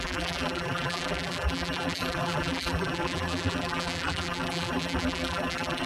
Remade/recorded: remade